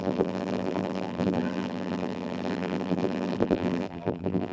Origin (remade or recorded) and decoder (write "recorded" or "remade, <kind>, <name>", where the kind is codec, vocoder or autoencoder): remade, vocoder, BigVGAN v2